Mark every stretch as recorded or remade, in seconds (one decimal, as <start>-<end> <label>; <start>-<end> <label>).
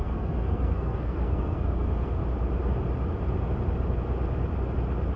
0.0-2.2 remade; 2.2-5.2 recorded